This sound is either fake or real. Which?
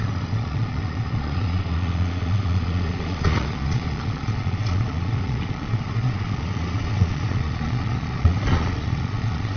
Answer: fake